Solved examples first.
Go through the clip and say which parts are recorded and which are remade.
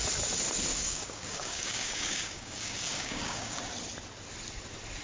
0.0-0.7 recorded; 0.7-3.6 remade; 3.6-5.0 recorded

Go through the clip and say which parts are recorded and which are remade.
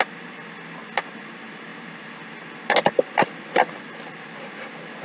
0.0-5.0 recorded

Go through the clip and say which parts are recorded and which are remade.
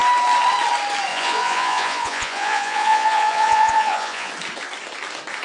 0.0-1.1 recorded; 1.1-4.3 remade; 4.3-5.4 recorded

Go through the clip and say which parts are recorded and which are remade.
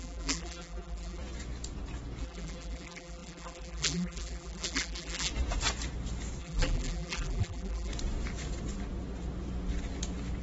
0.0-1.2 remade; 1.2-2.2 recorded; 2.2-5.3 remade; 5.3-6.4 recorded; 6.4-7.9 remade; 7.9-10.4 recorded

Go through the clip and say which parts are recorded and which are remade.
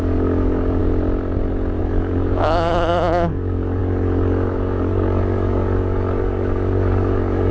0.0-0.8 remade; 0.8-1.8 recorded; 1.8-7.5 remade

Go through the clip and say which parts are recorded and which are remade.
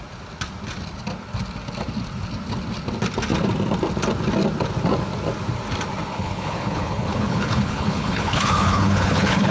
0.0-6.1 recorded; 6.1-9.5 remade